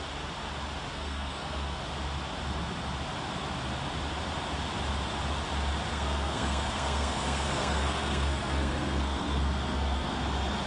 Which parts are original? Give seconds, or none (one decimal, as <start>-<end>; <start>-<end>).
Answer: 0.0-0.9; 1.8-5.9; 10.1-10.7